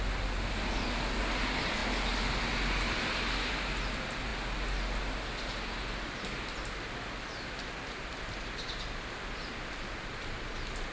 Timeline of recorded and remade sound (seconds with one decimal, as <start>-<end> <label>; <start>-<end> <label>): 0.0-10.9 recorded